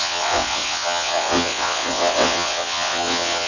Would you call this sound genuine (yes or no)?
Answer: no